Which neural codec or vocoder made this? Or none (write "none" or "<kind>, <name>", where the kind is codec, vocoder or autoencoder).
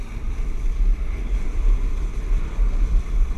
vocoder, BigVGAN v2